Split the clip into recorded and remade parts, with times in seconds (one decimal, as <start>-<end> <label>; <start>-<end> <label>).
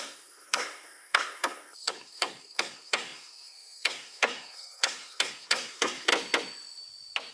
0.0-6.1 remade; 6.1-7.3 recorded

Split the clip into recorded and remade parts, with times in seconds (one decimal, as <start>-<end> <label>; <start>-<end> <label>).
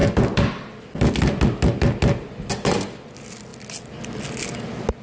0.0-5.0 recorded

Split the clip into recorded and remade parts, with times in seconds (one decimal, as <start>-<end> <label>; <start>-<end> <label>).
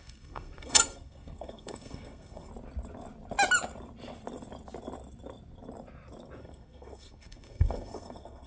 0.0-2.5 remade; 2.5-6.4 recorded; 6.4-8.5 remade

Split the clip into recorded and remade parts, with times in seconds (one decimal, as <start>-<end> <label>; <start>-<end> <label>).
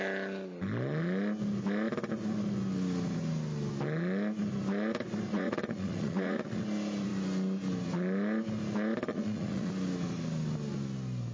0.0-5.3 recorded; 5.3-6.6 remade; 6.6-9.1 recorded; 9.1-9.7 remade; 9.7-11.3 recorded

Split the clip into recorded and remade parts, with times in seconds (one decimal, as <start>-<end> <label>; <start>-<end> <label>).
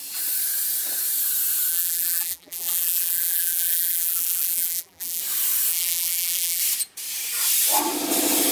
0.0-1.7 recorded; 1.7-5.2 remade; 5.2-5.7 recorded; 5.7-6.6 remade; 6.6-8.5 recorded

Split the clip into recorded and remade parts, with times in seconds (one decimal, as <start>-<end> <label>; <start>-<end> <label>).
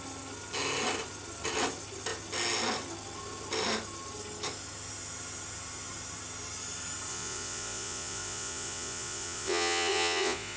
0.0-7.1 recorded; 7.1-10.6 remade